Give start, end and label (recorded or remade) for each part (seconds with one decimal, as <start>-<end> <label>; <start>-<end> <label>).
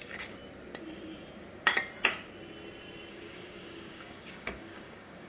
0.0-0.4 remade; 0.4-3.1 recorded; 3.1-5.3 remade